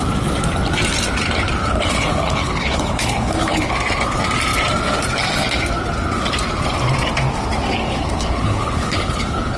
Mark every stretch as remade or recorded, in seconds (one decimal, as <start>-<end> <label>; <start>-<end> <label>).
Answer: 0.0-1.6 recorded; 1.6-3.7 remade; 3.7-7.8 recorded; 7.8-9.6 remade

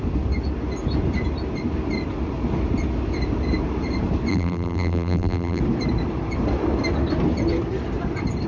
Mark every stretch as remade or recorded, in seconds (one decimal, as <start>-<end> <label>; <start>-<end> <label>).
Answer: 0.0-4.3 recorded; 4.3-5.6 remade; 5.6-8.5 recorded

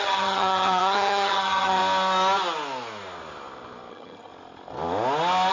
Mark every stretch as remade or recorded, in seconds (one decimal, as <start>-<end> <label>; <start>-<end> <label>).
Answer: 0.0-1.8 remade; 1.8-3.9 recorded; 3.9-4.3 remade; 4.3-5.5 recorded

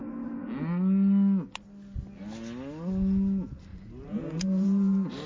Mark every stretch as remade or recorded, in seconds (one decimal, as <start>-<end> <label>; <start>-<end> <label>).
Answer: 0.0-3.7 recorded; 3.7-5.3 remade

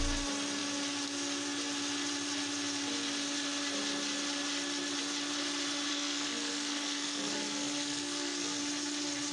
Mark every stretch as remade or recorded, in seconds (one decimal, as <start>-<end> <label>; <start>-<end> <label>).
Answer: 0.0-5.9 recorded; 5.9-8.6 remade; 8.6-9.3 recorded

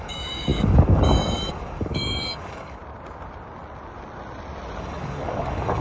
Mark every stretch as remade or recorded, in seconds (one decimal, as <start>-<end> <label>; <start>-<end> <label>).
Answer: 0.0-2.8 remade; 2.8-4.8 recorded; 4.8-5.8 remade

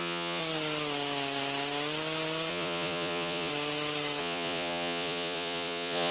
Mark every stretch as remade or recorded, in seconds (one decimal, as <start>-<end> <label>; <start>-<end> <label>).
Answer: 0.0-0.4 remade; 0.4-2.5 recorded; 2.5-3.5 remade; 3.5-4.2 recorded; 4.2-6.1 remade